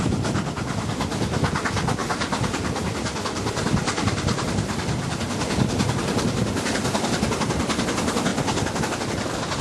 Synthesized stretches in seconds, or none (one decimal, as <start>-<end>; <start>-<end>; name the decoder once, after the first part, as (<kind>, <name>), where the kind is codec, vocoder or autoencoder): 2.0-7.3 (vocoder, BigVGAN v2)